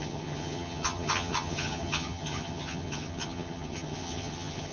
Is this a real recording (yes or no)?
no